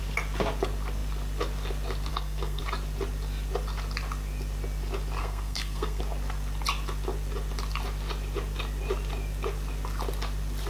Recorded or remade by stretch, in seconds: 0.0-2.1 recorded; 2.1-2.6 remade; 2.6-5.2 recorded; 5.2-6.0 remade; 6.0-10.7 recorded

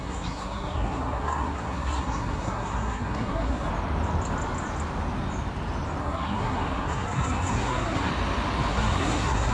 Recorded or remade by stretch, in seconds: 0.0-3.7 remade; 3.7-6.0 recorded; 6.0-8.1 remade; 8.1-8.7 recorded; 8.7-9.5 remade

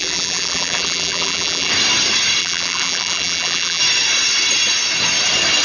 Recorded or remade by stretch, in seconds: 0.0-1.7 remade; 1.7-2.4 recorded; 2.4-3.8 remade; 3.8-5.6 recorded

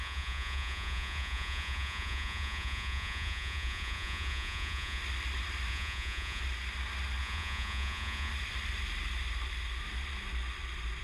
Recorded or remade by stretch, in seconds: 0.0-5.0 remade; 5.0-5.7 recorded; 5.7-6.4 remade; 6.4-7.2 recorded; 7.2-8.3 remade; 8.3-11.0 recorded

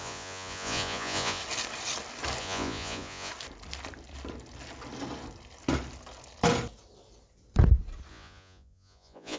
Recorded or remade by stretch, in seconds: 0.0-1.4 remade; 1.4-2.4 recorded; 2.4-3.3 remade; 3.3-8.1 recorded; 8.1-9.4 remade

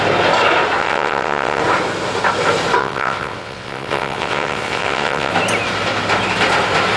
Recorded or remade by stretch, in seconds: 0.0-0.8 recorded; 0.8-1.6 remade; 1.6-2.8 recorded; 2.8-5.3 remade; 5.3-7.0 recorded